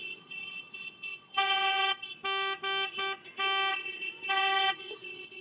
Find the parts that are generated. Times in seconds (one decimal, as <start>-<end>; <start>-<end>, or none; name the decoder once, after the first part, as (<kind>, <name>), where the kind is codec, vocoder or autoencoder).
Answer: 0.0-2.1 (vocoder, WaveNeXt); 3.7-5.4